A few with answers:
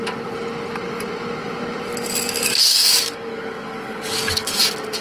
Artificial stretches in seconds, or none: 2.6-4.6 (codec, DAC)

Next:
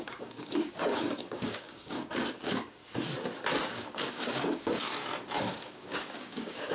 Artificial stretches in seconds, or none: 0.0-2.8 (codec, DAC); 3.7-4.9; 5.4-6.7

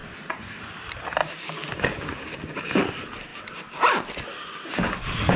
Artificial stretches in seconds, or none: 1.2-2.8 (codec, DAC); 4.3-5.4

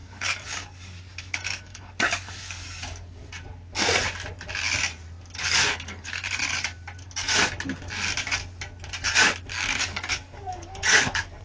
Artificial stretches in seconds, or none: 0.0-3.2 (codec, DAC); 5.4-6.4; 9.5-11.4

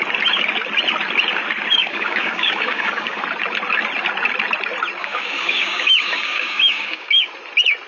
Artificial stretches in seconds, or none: 1.8-3.2 (codec, DAC); 5.0-7.3